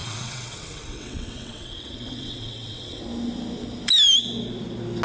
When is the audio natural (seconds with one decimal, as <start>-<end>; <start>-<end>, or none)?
3.0-5.0